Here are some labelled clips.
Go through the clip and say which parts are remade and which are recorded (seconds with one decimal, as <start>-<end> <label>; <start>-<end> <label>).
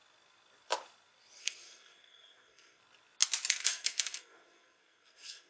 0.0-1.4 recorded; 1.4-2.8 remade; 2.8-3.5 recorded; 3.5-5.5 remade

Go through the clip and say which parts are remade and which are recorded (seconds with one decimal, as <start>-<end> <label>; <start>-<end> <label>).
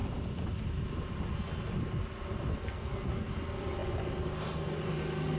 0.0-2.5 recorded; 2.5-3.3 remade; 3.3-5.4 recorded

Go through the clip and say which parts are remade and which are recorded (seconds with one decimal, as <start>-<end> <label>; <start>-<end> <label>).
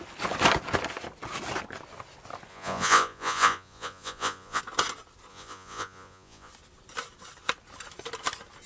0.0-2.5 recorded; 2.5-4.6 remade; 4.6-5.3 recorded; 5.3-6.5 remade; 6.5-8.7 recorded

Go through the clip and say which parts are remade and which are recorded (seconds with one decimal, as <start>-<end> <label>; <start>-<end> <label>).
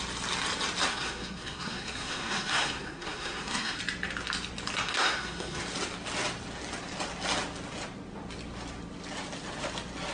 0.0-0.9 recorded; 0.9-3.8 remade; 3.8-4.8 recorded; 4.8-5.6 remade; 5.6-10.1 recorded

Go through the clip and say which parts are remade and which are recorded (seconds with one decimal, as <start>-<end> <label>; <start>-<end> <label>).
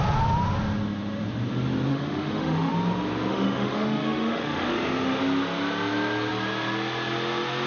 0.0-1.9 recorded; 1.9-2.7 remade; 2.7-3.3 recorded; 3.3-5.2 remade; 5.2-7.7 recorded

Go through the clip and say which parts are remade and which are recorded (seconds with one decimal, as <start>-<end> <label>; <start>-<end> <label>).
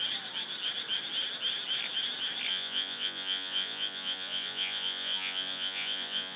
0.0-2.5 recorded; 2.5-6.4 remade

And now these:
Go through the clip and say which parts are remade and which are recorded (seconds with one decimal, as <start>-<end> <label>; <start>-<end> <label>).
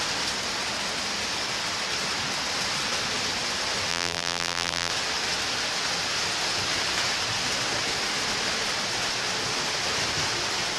0.0-3.9 recorded; 3.9-4.9 remade; 4.9-10.8 recorded